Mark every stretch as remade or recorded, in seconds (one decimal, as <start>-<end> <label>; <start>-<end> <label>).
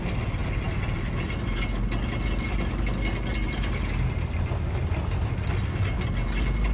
0.0-6.7 recorded